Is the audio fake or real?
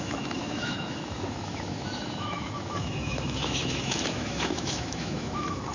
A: fake